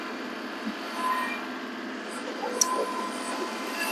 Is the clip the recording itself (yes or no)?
yes